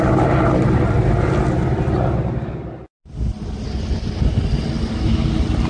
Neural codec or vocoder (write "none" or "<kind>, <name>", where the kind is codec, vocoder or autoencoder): none